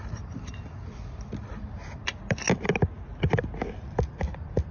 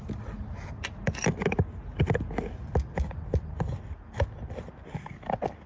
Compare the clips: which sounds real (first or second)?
second